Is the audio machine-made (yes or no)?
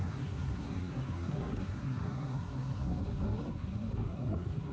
yes